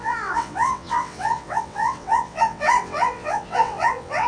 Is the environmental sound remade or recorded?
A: remade